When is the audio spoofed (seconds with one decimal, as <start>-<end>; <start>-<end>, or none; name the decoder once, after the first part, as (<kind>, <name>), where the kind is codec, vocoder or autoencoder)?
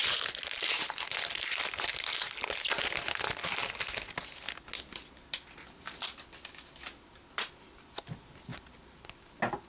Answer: none